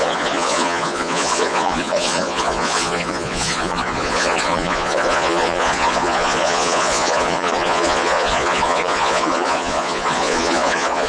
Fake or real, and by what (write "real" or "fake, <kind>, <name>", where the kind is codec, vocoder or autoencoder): fake, vocoder, Vocos